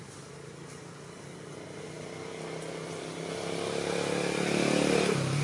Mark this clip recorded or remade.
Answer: recorded